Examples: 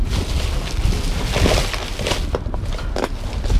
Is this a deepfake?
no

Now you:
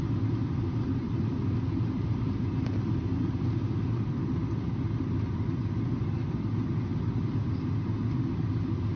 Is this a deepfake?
no